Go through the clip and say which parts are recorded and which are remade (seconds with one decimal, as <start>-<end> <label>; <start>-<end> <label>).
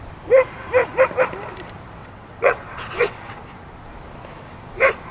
0.0-2.0 recorded; 2.0-3.4 remade; 3.4-5.1 recorded